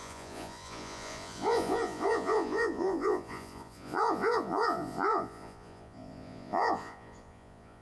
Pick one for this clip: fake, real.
fake